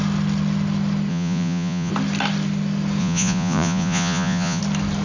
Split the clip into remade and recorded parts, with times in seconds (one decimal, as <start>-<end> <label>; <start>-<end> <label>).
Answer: 0.0-1.1 recorded; 1.1-1.9 remade; 1.9-3.0 recorded; 3.0-4.6 remade; 4.6-5.0 recorded